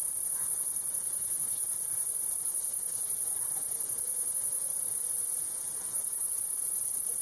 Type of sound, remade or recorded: remade